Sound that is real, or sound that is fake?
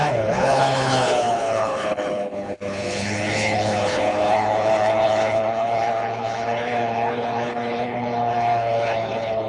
fake